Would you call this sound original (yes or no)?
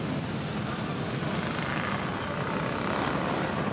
yes